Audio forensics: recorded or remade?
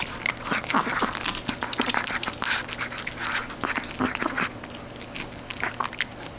recorded